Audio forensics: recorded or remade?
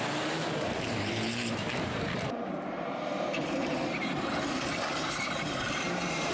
remade